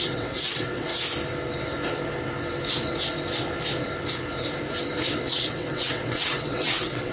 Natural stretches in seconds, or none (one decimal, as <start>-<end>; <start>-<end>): 0.9-5.2